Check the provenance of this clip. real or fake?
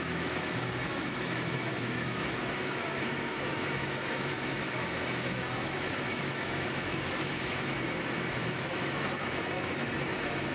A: fake